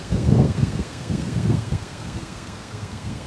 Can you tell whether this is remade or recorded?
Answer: remade